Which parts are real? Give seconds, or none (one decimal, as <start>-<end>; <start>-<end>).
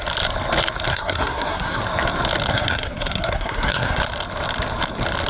0.0-0.9; 1.8-2.5; 4.0-5.3